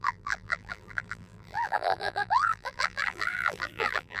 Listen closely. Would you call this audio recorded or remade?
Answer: remade